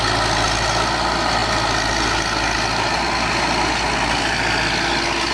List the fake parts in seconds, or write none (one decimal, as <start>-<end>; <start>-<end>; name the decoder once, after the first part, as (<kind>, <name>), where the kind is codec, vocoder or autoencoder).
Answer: none